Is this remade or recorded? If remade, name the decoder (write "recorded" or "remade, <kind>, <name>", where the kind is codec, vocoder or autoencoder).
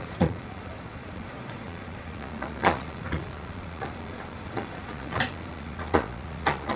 remade, vocoder, Vocos